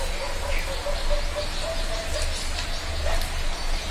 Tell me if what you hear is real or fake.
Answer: real